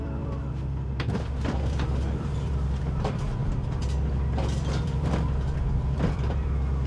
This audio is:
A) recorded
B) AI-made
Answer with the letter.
B